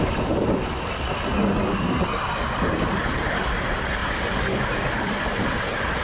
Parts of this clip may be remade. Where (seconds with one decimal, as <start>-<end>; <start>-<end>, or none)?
0.0-1.3; 3.1-4.0; 5.0-6.0